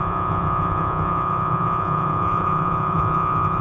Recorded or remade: remade